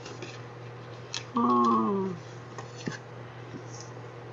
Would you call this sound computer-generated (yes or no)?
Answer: no